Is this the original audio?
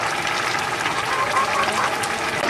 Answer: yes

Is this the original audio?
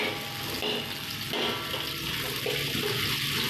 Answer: yes